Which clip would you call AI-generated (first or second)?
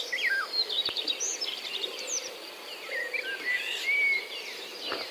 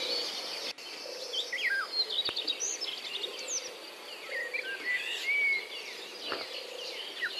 first